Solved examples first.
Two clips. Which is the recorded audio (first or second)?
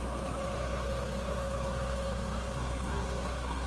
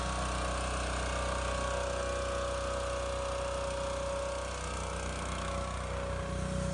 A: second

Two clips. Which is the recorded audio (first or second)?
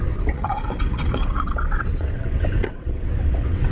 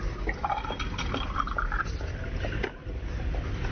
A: second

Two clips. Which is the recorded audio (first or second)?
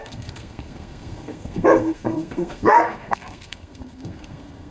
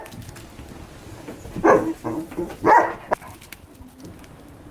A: second